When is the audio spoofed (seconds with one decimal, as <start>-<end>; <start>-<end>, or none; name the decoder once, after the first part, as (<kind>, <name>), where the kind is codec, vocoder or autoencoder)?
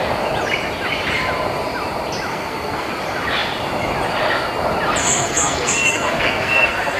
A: 2.3-2.9 (codec, SNAC); 5.0-7.0